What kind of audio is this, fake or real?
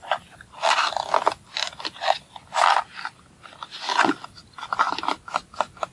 real